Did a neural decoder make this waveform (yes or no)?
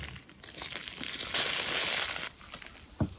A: no